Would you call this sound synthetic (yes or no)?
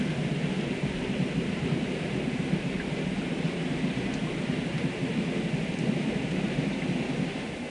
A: no